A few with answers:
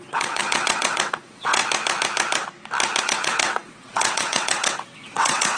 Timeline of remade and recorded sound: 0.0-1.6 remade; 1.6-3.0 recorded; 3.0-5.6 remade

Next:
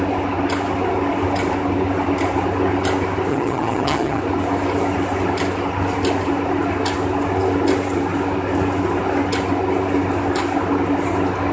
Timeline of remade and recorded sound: 0.0-3.3 recorded; 3.3-4.2 remade; 4.2-11.5 recorded

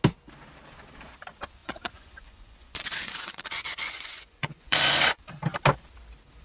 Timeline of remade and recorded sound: 0.0-1.6 recorded; 1.6-5.2 remade; 5.2-6.4 recorded

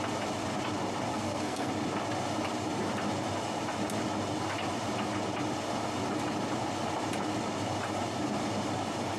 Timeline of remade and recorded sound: 0.0-1.1 recorded; 1.1-1.7 remade; 1.7-9.2 recorded

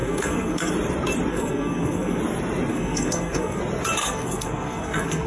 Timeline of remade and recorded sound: 0.0-0.7 remade; 0.7-1.3 recorded; 1.3-2.2 remade; 2.2-2.7 recorded; 2.7-3.6 remade; 3.6-4.0 recorded; 4.0-5.3 remade

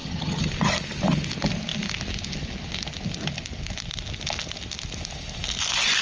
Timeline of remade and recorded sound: 0.0-0.5 remade; 0.5-6.0 recorded